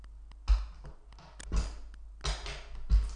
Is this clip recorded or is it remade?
recorded